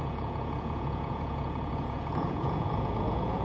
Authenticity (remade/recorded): remade